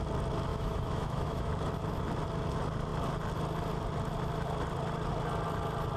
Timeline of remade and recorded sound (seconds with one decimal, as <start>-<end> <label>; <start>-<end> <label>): 0.0-0.5 recorded; 0.5-1.5 remade; 1.5-6.0 recorded